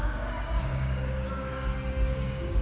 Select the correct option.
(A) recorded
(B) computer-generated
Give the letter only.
B